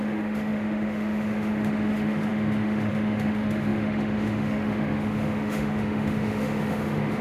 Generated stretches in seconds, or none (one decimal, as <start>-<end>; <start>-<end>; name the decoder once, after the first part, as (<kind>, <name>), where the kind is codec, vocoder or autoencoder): 0.0-7.2 (autoencoder, DAC-VAE)